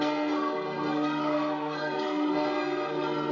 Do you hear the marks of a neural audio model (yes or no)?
yes